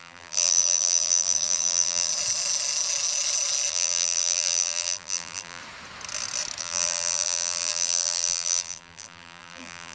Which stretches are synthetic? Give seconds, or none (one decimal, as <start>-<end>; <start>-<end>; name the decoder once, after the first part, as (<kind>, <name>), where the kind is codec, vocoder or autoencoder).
0.0-2.1 (vocoder, BigVGAN v2); 3.7-5.6; 6.6-9.9